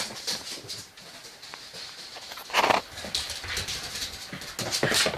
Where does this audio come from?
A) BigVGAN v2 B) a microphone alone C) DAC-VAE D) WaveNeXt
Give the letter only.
B